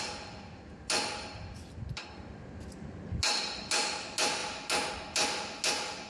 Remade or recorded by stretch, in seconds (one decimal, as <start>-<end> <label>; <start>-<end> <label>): 0.0-6.1 recorded